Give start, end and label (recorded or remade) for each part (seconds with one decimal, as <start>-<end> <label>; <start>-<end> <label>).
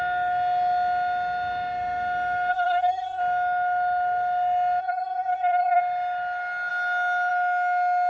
0.0-2.5 recorded; 2.5-3.2 remade; 3.2-4.8 recorded; 4.8-5.8 remade; 5.8-8.1 recorded